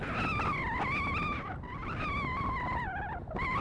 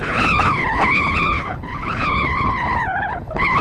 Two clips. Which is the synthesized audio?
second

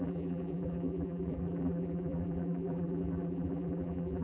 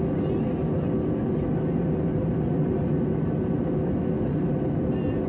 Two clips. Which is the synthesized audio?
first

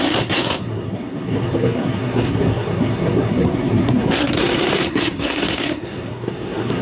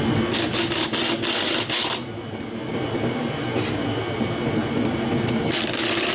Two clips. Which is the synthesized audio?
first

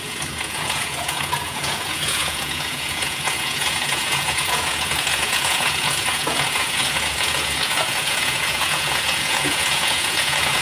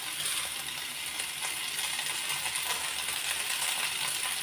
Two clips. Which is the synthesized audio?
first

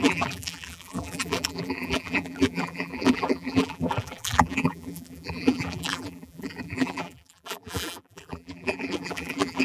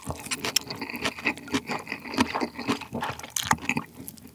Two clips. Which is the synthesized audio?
first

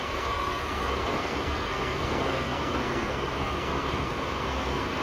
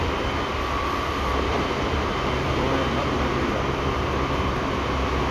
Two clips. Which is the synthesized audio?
first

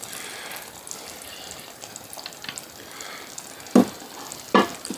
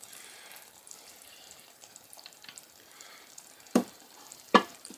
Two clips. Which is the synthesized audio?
second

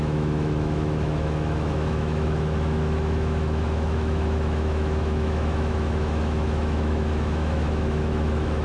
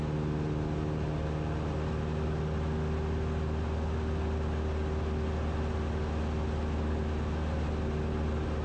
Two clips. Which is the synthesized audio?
first